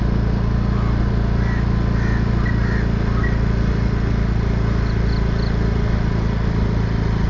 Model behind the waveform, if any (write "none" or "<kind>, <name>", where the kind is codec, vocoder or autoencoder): none